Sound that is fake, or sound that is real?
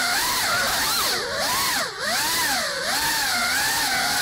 fake